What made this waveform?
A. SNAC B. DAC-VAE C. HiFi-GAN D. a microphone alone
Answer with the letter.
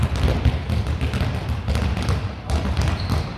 D